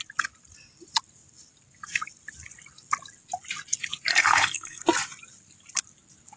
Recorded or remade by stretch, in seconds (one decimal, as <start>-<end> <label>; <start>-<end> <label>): 0.0-4.1 recorded; 4.1-4.8 remade; 4.8-6.4 recorded